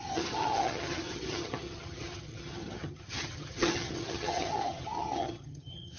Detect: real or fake fake